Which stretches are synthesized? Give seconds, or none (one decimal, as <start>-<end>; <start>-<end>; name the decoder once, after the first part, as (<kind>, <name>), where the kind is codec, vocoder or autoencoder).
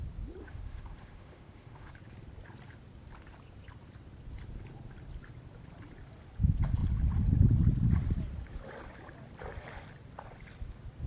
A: 0.4-1.9 (autoencoder, DAC-VAE)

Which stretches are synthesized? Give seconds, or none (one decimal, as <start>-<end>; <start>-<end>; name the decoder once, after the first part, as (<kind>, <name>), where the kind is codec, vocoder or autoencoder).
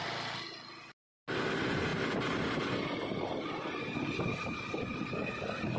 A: none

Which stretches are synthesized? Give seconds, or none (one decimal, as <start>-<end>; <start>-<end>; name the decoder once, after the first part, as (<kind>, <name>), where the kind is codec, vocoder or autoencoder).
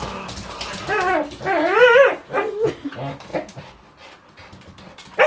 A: none